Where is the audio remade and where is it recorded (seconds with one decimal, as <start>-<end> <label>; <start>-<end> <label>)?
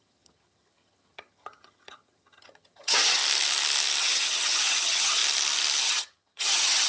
0.0-3.2 remade; 3.2-4.0 recorded; 4.0-5.2 remade; 5.2-5.8 recorded; 5.8-6.9 remade